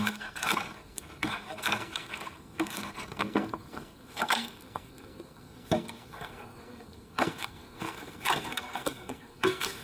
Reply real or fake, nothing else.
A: fake